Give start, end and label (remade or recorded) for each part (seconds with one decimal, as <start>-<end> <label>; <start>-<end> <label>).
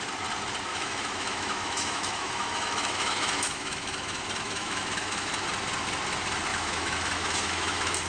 0.0-0.7 recorded; 0.7-5.3 remade; 5.3-6.5 recorded; 6.5-8.1 remade